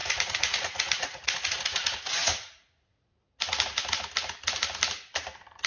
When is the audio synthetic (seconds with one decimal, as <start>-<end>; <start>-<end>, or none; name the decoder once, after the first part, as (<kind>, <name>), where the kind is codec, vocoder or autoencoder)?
0.0-3.4 (vocoder, Vocos)

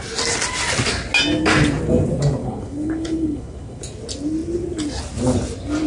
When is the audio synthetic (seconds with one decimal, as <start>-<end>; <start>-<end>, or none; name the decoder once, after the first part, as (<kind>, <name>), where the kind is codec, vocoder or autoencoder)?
2.4-3.8 (codec, HILCodec)

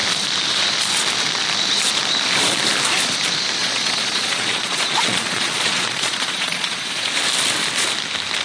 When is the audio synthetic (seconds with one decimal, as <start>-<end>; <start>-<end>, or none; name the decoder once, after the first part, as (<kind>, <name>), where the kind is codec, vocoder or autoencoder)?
3.6-7.2 (vocoder, Vocos)

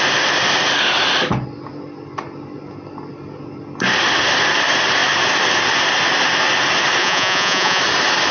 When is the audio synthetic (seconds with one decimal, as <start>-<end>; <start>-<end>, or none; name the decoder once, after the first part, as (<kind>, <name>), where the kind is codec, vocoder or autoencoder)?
7.0-7.8 (vocoder, Vocos)

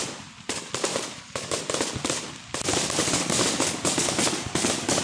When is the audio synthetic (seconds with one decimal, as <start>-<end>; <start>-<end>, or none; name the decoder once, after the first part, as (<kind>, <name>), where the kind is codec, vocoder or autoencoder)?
0.9-1.6 (codec, DAC); 2.7-5.0